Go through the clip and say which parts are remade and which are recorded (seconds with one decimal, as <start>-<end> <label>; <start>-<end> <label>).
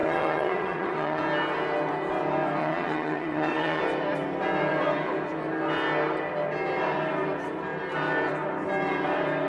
0.0-1.2 remade; 1.2-2.6 recorded; 2.6-3.8 remade; 3.8-9.5 recorded